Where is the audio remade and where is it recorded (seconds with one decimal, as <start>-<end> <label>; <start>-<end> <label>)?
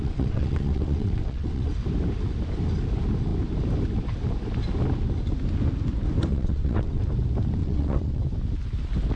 0.0-1.7 remade; 1.7-6.3 recorded; 6.3-7.0 remade; 7.0-7.6 recorded; 7.6-8.2 remade; 8.2-9.2 recorded